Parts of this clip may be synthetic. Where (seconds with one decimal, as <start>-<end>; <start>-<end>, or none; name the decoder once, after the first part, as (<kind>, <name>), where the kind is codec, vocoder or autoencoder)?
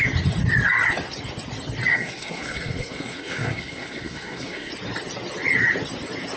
1.9-4.7 (codec, SNAC)